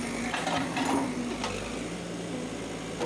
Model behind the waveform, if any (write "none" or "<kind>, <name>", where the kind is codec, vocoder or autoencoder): none